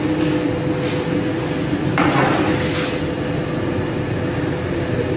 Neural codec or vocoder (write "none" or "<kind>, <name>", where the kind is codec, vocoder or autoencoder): none